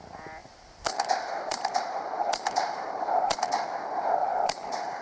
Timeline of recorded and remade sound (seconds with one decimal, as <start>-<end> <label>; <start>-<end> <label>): 0.0-0.4 recorded; 0.4-3.4 remade; 3.4-4.2 recorded; 4.2-5.0 remade